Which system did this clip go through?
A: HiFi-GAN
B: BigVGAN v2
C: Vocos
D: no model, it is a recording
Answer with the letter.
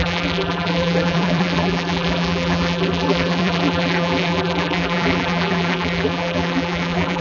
B